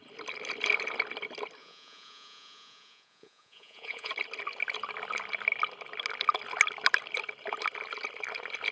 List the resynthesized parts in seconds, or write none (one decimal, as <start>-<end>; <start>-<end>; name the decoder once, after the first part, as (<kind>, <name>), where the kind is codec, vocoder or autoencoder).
1.6-4.1 (vocoder, Vocos)